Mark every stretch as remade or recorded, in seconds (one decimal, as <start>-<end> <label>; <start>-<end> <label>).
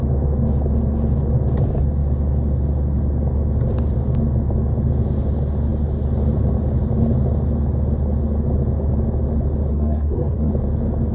0.0-9.7 recorded; 9.7-10.5 remade; 10.5-11.1 recorded